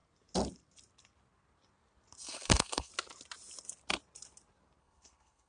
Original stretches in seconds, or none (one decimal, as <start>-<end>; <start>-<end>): 0.0-2.2; 2.9-4.8